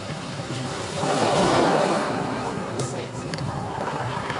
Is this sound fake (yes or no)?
yes